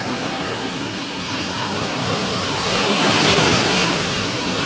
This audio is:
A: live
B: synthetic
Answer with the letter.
B